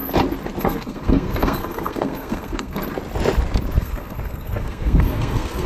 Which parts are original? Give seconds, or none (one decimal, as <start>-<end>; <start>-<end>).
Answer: 0.0-0.6; 2.8-3.8